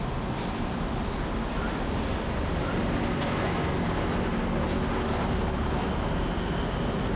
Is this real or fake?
real